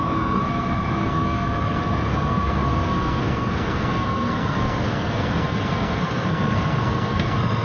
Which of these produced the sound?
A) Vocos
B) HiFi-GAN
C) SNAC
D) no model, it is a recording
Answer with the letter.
C